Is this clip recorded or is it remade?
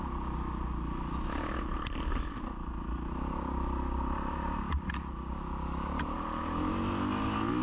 recorded